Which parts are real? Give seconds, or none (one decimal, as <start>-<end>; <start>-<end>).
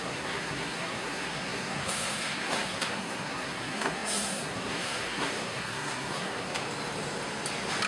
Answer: 6.6-7.9